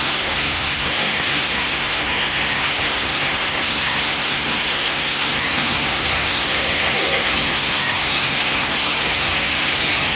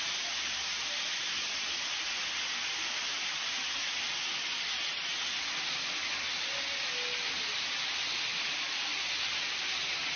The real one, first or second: second